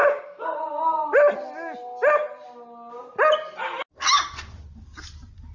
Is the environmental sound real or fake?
real